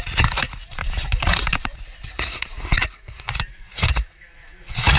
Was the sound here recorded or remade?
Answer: remade